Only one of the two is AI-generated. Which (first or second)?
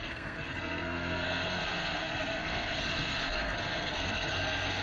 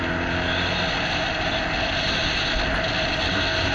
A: first